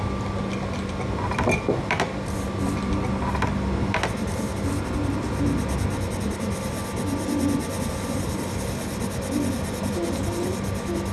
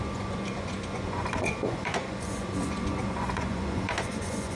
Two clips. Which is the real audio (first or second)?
first